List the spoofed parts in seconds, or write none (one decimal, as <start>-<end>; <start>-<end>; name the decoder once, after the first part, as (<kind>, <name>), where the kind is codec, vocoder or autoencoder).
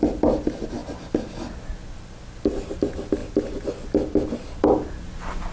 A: none